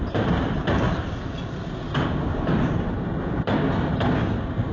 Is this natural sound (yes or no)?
yes